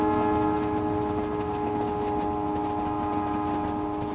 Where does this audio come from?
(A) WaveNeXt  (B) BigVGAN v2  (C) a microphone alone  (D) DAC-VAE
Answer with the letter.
C